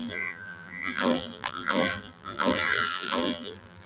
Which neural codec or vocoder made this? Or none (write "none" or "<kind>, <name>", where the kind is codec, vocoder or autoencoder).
vocoder, BigVGAN v2